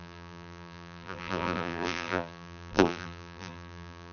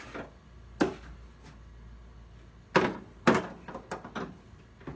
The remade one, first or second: first